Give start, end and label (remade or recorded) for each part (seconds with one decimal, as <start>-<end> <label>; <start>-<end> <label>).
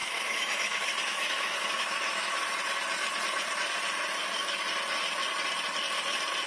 0.0-2.4 remade; 2.4-6.5 recorded